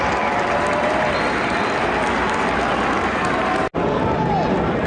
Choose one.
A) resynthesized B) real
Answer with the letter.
B